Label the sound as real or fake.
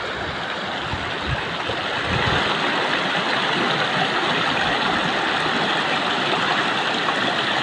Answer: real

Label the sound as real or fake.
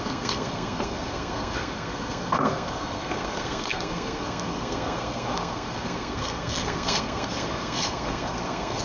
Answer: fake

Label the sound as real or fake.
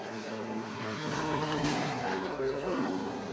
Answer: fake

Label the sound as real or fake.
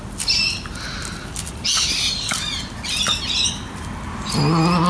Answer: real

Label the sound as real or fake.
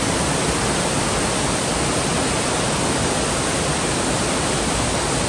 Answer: real